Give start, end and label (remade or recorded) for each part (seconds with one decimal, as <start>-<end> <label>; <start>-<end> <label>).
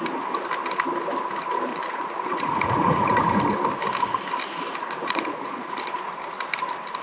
0.0-1.7 recorded; 1.7-3.4 remade; 3.4-4.8 recorded; 4.8-6.1 remade; 6.1-7.0 recorded